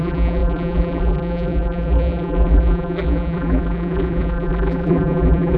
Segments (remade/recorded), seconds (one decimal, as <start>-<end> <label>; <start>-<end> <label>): 0.0-5.6 remade